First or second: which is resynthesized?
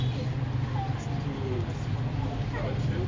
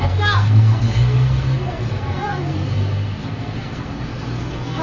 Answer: second